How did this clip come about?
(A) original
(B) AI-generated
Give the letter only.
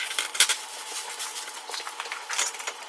B